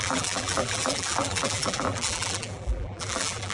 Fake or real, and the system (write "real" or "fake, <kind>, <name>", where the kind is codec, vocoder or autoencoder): fake, vocoder, BigVGAN v2